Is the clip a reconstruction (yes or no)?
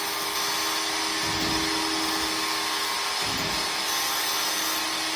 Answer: no